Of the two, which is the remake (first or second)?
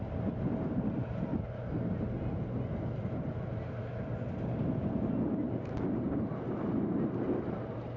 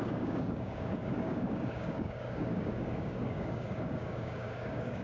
second